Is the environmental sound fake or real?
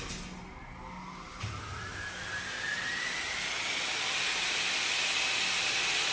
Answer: real